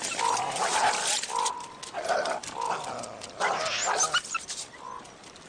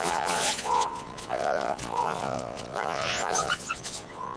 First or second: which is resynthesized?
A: second